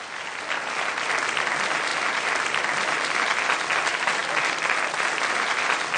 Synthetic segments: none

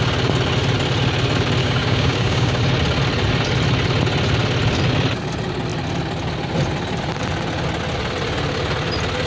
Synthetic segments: 1.6-2.6

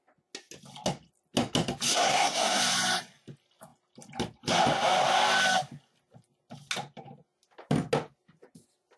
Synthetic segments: 1.9-2.6

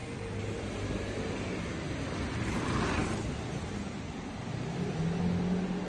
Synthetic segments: none

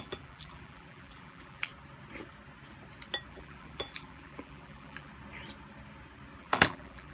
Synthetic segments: 0.0-1.7; 3.3-5.1; 6.4-7.1

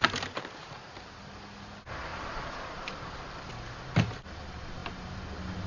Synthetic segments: 0.0-0.9; 2.1-3.5

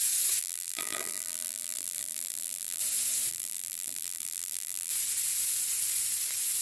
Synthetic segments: 0.4-2.8; 3.3-4.9

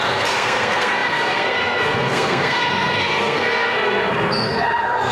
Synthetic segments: 0.0-5.1